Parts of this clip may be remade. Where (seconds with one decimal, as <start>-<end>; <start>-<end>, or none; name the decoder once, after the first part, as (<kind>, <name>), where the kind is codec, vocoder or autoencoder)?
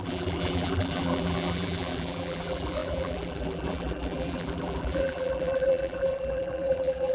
0.0-7.1 (vocoder, BigVGAN v2)